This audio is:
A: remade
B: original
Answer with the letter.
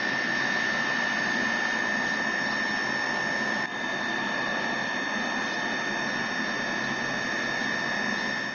B